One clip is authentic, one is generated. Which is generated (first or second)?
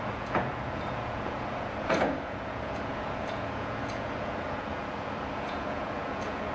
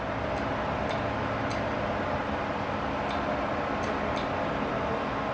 first